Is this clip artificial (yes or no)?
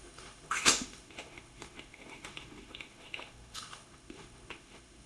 yes